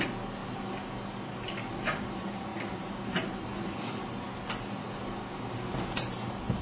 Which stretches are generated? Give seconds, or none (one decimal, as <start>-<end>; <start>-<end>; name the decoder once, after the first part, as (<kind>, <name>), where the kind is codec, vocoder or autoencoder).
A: 5.2-5.7 (codec, DAC)